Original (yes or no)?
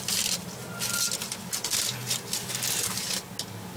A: yes